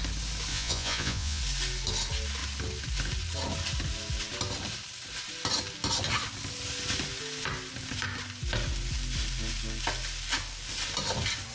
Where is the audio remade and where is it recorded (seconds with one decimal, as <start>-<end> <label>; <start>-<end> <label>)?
0.0-0.5 recorded; 0.5-1.4 remade; 1.4-11.5 recorded

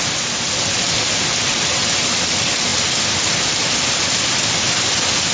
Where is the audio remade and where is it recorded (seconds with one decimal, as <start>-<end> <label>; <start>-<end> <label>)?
0.0-5.3 recorded